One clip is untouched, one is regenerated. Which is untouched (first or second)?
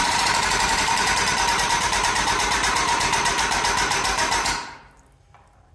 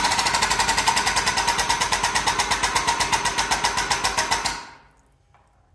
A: second